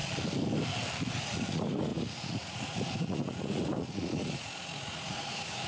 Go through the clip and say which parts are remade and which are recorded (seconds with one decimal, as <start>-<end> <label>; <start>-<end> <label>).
0.0-1.1 recorded; 1.1-5.7 remade